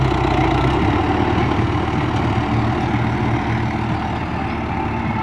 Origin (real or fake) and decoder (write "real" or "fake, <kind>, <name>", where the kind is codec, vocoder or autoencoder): real